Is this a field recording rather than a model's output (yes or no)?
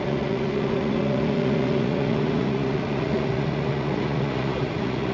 no